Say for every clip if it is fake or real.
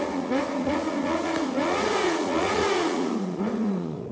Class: fake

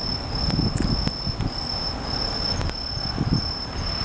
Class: real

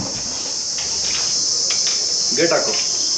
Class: real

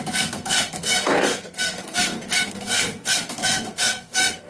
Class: fake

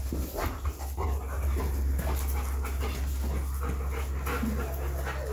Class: real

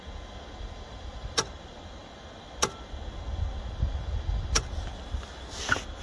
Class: real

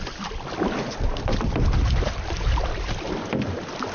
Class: real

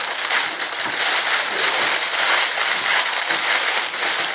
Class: real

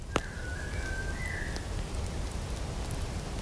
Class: real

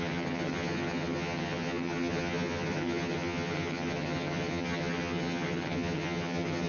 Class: fake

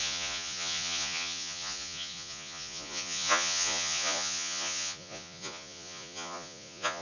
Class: fake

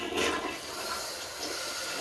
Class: real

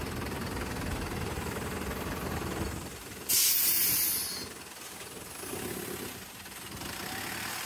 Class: real